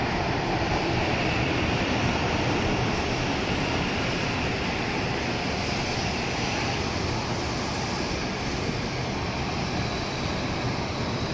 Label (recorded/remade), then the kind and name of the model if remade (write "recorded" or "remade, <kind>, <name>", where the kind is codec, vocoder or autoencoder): remade, vocoder, BigVGAN v2